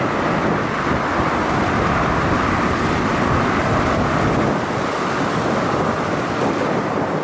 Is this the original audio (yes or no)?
yes